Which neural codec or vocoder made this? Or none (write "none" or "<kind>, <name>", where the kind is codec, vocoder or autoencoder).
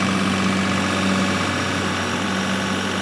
none